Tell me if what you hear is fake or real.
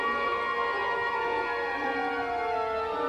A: real